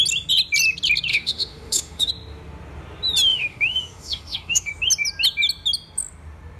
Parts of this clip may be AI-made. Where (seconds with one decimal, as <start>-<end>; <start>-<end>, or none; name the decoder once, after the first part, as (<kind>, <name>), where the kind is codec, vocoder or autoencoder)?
1.1-2.1 (autoencoder, DAC-VAE); 3.3-4.7